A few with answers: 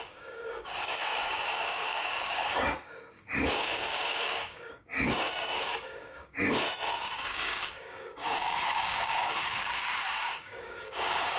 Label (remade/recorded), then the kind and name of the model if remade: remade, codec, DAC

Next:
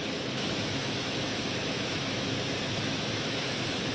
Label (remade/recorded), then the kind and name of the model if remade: remade, autoencoder, DAC-VAE